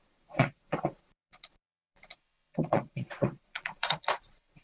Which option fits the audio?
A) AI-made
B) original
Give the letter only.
A